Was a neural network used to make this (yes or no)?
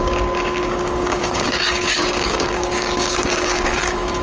yes